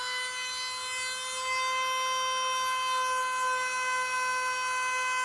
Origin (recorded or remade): recorded